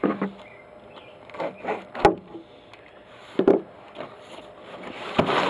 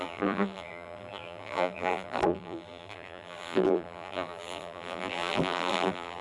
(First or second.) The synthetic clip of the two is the second